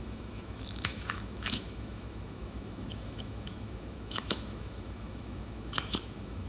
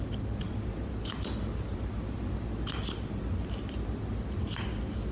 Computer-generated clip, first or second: first